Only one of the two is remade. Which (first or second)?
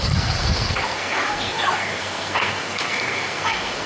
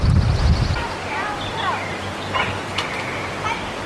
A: first